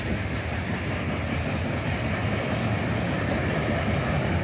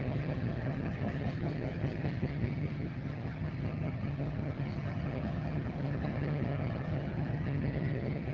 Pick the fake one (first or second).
second